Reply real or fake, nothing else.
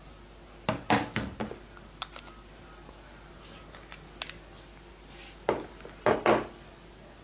real